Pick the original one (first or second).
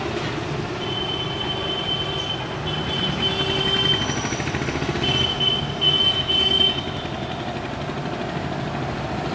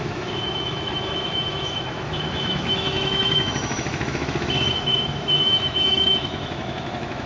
first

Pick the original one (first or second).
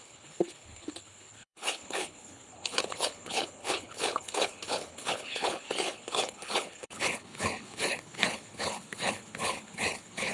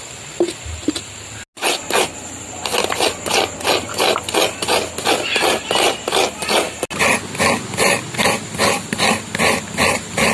second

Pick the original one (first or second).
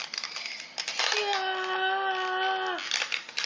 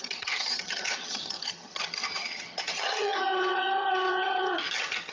first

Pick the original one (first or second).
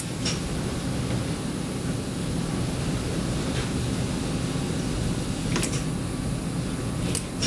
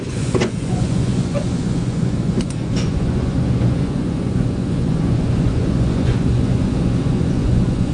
first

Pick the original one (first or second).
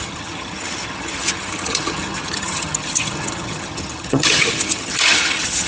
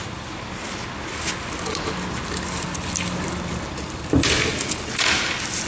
second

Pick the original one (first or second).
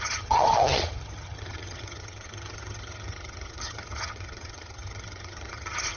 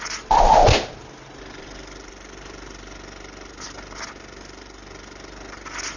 second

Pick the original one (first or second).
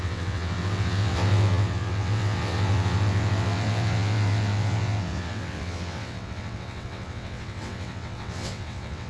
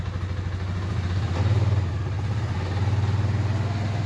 second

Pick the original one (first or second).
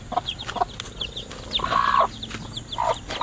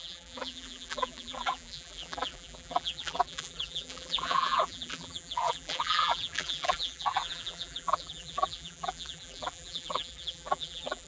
first